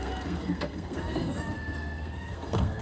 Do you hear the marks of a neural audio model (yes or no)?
yes